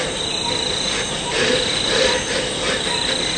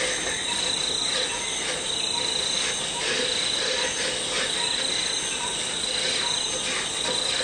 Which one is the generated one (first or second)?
first